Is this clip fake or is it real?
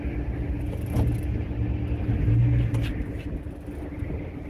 real